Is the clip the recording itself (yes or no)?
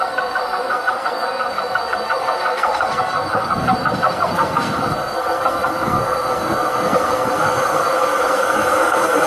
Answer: no